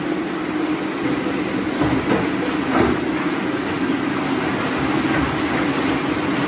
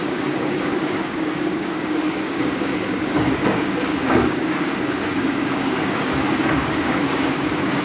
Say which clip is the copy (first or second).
second